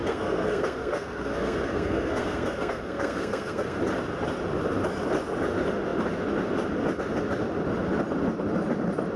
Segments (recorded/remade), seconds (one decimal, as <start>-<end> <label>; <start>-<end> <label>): 0.0-3.8 remade; 3.8-9.2 recorded